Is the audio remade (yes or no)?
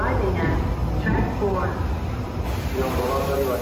no